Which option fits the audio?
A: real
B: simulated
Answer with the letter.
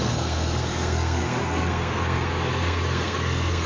B